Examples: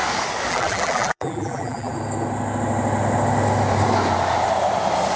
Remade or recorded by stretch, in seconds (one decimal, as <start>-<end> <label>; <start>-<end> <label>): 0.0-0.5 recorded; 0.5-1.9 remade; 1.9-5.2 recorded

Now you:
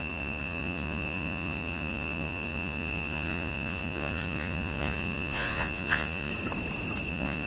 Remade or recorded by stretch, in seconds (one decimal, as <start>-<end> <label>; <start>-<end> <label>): 0.0-6.3 remade; 6.3-7.1 recorded; 7.1-7.5 remade

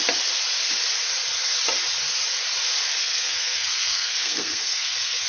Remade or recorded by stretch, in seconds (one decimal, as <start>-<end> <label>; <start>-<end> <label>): 0.0-3.0 recorded; 3.0-5.3 remade

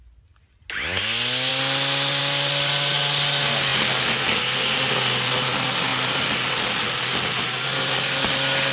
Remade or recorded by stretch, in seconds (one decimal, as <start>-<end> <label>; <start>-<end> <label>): 0.0-8.7 recorded

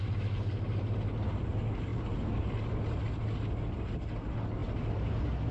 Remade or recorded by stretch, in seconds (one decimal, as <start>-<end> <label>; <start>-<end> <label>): 0.0-1.9 recorded; 1.9-2.7 remade; 2.7-5.5 recorded

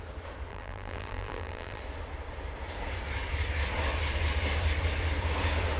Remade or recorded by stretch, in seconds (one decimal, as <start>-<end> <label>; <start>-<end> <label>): 0.0-0.5 recorded; 0.5-1.8 remade; 1.8-5.8 recorded

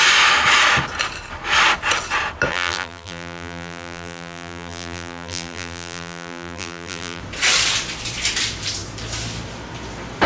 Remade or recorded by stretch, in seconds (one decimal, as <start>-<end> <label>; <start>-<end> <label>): 0.0-2.5 recorded; 2.5-7.2 remade; 7.2-10.3 recorded